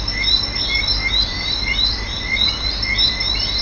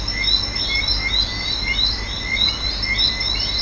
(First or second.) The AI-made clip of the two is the first